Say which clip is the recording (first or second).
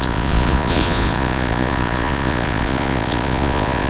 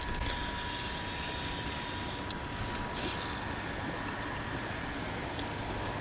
second